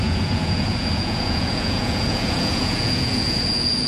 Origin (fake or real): fake